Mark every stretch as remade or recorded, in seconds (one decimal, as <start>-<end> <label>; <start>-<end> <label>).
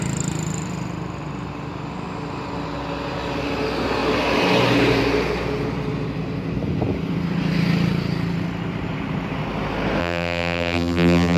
0.0-10.0 recorded; 10.0-11.4 remade